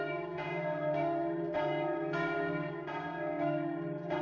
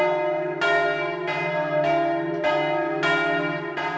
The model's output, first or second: first